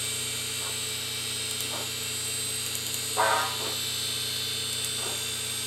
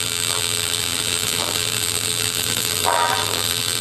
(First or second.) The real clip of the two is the first